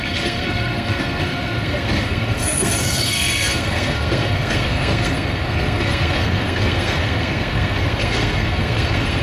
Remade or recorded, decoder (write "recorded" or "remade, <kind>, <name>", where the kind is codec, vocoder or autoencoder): remade, codec, SNAC